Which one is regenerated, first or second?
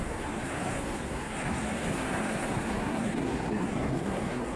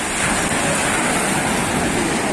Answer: first